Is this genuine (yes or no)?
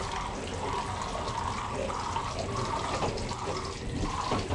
yes